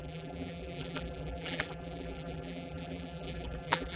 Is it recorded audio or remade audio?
remade